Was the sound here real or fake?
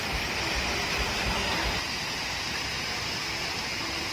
real